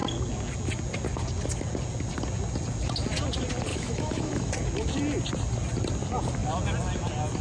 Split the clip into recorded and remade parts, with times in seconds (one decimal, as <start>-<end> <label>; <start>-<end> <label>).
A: 0.0-3.7 recorded; 3.7-4.5 remade; 4.5-7.4 recorded